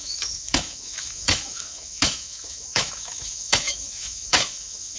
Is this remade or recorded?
remade